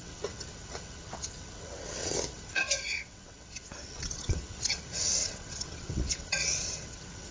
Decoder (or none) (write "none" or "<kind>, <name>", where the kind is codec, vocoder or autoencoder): vocoder, WaveNeXt